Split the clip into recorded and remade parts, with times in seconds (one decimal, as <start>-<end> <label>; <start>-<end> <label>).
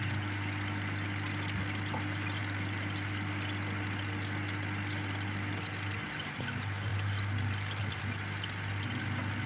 0.0-9.5 recorded